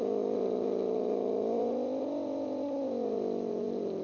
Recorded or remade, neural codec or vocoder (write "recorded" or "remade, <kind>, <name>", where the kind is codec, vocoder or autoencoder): recorded